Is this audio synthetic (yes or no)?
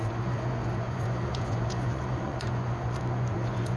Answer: yes